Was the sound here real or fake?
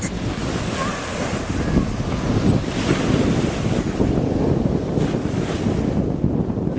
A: real